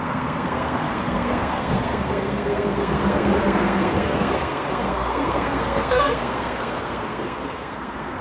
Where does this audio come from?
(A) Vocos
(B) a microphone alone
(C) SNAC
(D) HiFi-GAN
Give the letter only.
C